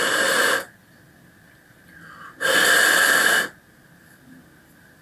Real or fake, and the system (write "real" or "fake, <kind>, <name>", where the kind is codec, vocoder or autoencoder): real